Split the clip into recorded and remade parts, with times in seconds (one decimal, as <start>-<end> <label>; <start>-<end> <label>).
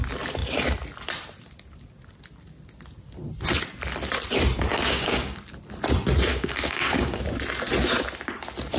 0.0-4.7 recorded; 4.7-5.4 remade; 5.4-6.3 recorded; 6.3-7.2 remade; 7.2-8.8 recorded